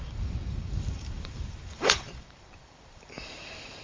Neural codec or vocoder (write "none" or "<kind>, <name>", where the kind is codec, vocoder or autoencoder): vocoder, BigVGAN v2